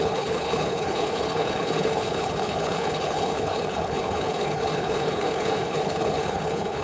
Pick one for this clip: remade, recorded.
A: remade